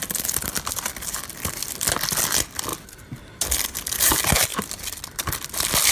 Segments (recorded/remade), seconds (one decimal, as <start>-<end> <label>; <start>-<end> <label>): 0.0-1.7 remade; 1.7-4.5 recorded; 4.5-5.0 remade; 5.0-5.9 recorded